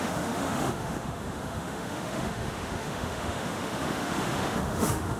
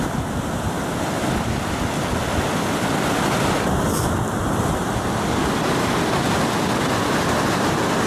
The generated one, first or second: first